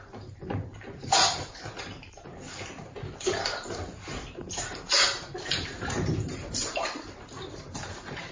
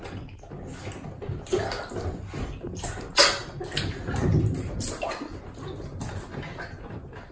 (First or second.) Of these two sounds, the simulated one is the first